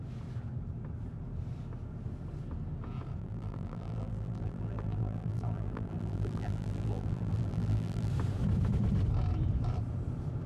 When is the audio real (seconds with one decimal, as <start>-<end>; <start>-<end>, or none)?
0.0-3.2; 8.1-10.5